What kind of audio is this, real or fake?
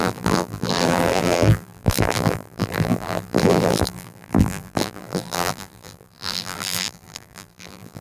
fake